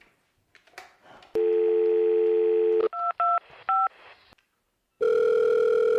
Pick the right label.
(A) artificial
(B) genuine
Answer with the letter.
B